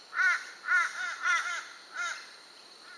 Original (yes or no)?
yes